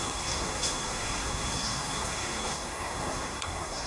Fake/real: fake